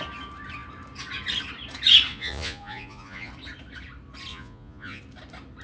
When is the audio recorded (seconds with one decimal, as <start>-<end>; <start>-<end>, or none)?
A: 0.0-2.1; 3.3-4.3; 5.0-5.6